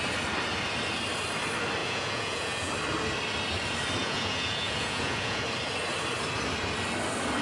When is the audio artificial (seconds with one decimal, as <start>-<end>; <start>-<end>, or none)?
1.8-2.7; 4.0-5.4